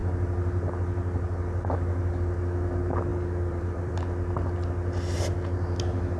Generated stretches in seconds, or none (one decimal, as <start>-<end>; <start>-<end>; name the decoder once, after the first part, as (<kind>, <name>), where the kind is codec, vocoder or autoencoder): 3.1-3.9 (vocoder, BigVGAN v2)